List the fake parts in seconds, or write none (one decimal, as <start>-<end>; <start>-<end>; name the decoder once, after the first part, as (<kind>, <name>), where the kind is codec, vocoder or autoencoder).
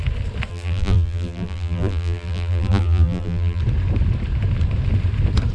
0.5-3.6 (vocoder, BigVGAN v2)